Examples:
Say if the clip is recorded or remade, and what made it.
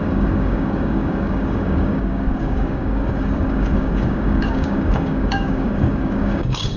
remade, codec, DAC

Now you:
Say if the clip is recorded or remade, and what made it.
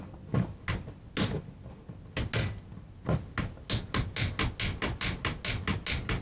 recorded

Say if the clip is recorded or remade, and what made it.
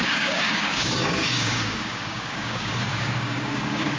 remade, codec, DAC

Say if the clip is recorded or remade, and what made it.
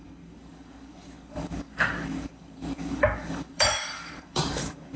remade, codec, DAC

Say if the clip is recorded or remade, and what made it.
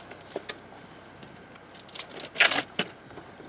recorded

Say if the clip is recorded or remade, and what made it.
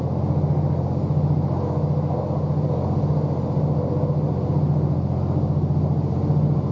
recorded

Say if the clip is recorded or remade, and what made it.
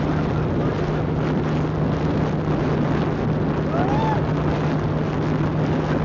recorded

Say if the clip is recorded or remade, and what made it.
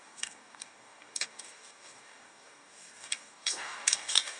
remade, codec, DAC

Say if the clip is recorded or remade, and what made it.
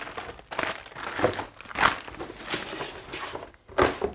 recorded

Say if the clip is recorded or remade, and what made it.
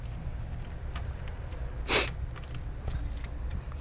recorded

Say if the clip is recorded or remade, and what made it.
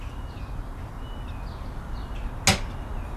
recorded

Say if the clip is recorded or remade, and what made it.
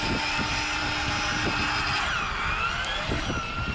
recorded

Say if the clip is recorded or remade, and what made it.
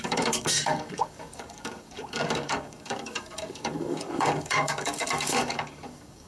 remade, codec, DAC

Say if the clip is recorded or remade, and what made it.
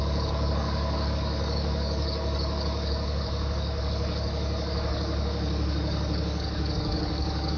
remade, codec, DAC